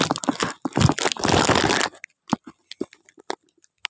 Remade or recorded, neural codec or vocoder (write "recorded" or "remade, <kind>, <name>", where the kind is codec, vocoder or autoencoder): recorded